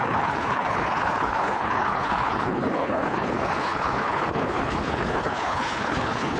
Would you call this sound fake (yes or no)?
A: yes